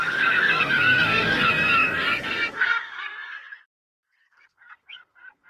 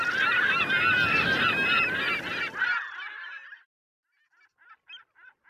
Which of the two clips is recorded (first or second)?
second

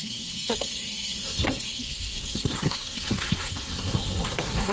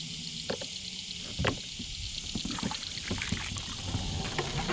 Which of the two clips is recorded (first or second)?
second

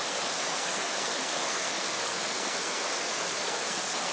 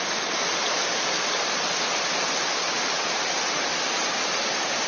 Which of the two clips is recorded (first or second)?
second